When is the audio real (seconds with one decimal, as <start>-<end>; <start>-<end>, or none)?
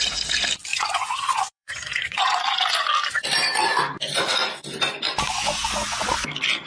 0.0-0.7; 2.4-6.7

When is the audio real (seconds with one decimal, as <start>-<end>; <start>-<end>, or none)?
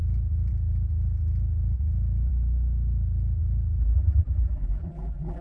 0.0-3.8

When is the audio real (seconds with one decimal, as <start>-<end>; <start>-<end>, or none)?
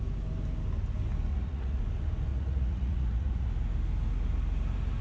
0.0-1.3; 1.8-2.3; 3.5-5.0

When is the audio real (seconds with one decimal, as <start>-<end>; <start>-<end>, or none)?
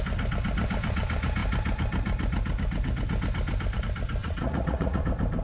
0.0-4.2; 5.0-5.4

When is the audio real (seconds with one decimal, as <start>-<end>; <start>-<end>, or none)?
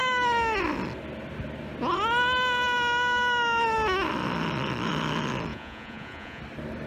0.0-5.5; 6.4-6.9